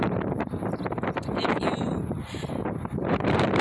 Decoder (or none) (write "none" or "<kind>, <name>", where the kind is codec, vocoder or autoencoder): vocoder, BigVGAN v2